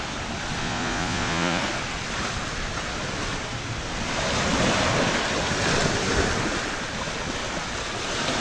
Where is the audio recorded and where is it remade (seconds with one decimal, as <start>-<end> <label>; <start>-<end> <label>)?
0.0-0.6 recorded; 0.6-1.6 remade; 1.6-8.4 recorded